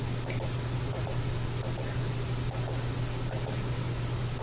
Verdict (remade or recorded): recorded